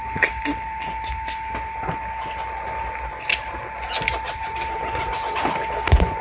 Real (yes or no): yes